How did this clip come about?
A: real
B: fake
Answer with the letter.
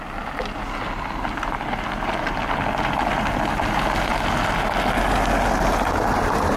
A